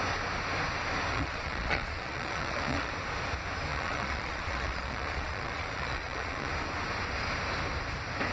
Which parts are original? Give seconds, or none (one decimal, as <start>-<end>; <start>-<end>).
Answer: 0.0-1.1; 2.9-3.7; 6.5-8.3